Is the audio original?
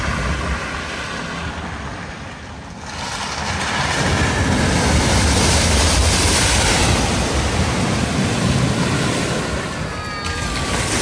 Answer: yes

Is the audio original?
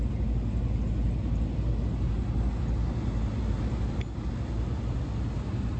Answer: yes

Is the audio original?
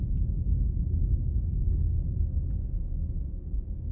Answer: no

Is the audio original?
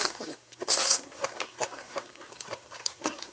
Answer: no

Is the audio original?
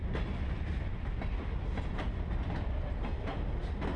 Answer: yes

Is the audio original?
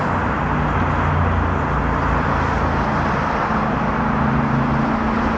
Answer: yes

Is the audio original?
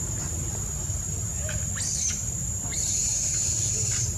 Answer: yes